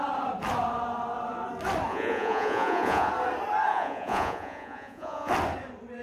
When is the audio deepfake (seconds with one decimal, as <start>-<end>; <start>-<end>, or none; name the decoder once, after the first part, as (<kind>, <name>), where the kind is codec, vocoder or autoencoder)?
1.9-3.1 (vocoder, Vocos); 3.7-5.3